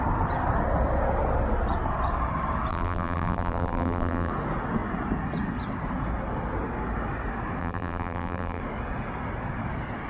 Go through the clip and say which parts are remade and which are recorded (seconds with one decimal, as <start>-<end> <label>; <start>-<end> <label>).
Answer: 0.0-2.7 recorded; 2.7-4.3 remade; 4.3-7.6 recorded; 7.6-8.6 remade; 8.6-10.1 recorded